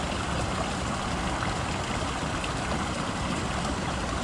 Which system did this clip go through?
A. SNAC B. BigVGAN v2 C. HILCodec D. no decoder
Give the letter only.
D